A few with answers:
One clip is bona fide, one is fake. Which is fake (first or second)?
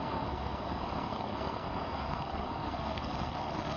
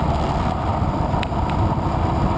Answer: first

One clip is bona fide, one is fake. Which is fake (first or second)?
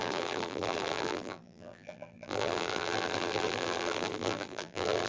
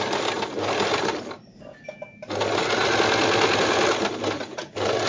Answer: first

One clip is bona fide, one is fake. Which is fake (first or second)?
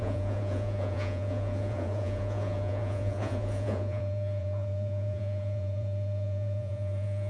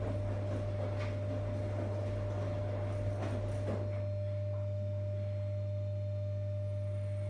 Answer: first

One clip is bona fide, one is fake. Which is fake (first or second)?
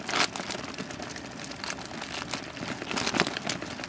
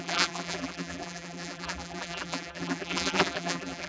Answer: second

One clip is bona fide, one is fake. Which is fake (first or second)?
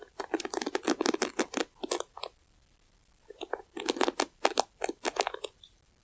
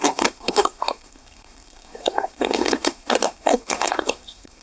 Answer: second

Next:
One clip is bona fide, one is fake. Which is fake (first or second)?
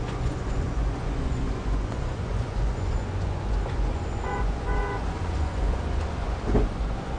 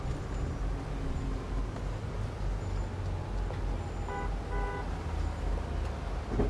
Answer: first